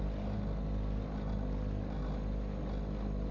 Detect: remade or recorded recorded